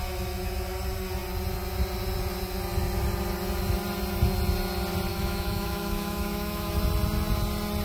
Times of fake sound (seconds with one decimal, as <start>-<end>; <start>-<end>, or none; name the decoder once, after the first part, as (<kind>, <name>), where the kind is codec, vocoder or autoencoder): 5.1-6.8 (autoencoder, DAC-VAE)